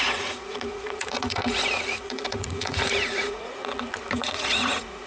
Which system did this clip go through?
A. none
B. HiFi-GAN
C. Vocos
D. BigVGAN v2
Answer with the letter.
C